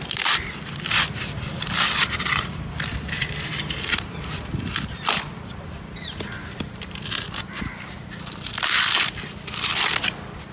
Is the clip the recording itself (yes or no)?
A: no